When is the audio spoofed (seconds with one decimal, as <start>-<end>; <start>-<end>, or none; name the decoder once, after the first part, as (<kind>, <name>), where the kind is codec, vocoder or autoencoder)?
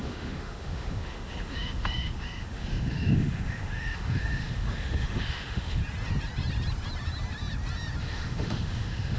0.0-5.8 (autoencoder, DAC-VAE); 8.0-9.2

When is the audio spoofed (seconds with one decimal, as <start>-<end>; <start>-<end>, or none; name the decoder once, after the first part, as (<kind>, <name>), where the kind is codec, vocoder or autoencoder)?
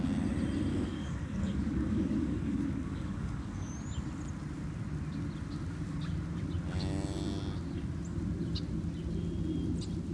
0.7-3.7 (codec, DAC)